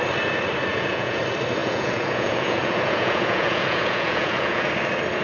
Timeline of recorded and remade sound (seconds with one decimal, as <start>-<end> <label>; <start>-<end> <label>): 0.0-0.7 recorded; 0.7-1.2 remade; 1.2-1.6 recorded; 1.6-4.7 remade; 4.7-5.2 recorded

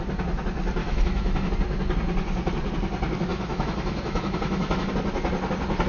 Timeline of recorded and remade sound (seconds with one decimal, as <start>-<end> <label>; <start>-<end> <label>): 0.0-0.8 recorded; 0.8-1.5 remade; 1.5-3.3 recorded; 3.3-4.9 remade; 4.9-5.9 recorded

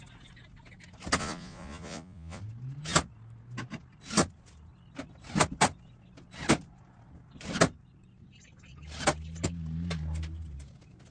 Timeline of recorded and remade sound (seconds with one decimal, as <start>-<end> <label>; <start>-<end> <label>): 0.0-1.2 recorded; 1.2-2.4 remade; 2.4-11.1 recorded

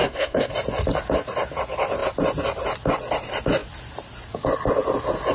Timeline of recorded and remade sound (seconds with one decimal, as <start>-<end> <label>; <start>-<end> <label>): 0.0-0.5 remade; 0.5-5.3 recorded